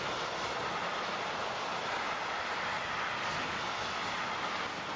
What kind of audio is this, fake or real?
real